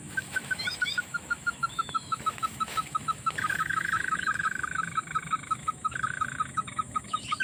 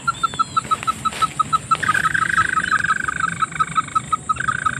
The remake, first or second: first